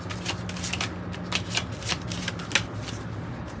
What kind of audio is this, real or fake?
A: real